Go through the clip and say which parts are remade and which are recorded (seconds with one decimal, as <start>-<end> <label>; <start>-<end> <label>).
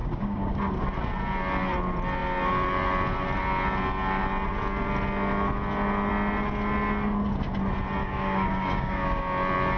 0.0-0.6 remade; 0.6-8.0 recorded; 8.0-9.2 remade; 9.2-9.8 recorded